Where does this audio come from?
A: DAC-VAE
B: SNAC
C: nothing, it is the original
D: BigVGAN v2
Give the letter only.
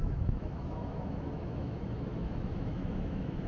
A